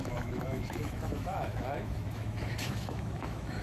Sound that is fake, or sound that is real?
fake